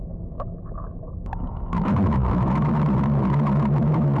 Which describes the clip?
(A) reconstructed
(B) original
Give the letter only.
A